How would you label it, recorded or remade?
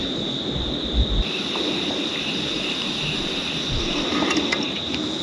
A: recorded